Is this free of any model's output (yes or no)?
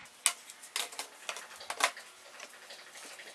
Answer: yes